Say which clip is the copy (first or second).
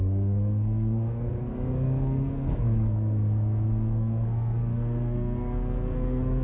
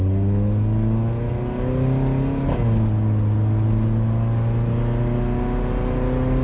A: first